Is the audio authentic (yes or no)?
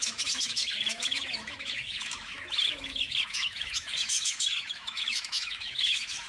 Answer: no